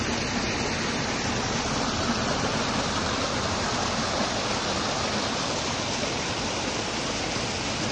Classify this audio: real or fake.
real